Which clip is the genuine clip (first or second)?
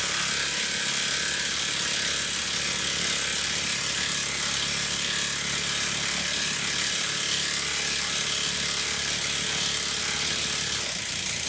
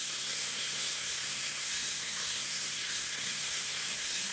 first